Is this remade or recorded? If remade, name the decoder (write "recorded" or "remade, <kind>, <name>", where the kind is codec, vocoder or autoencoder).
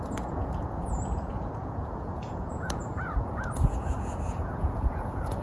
remade, vocoder, Vocos